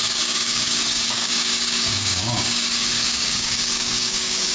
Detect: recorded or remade remade